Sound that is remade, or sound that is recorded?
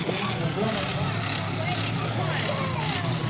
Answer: recorded